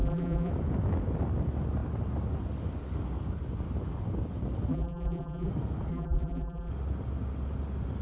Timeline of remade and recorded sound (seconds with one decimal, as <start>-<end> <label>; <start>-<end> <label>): 0.0-0.5 remade; 0.5-4.7 recorded; 4.7-5.5 remade; 5.5-5.9 recorded; 5.9-6.7 remade; 6.7-8.0 recorded